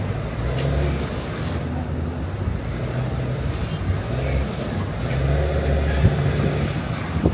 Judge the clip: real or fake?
real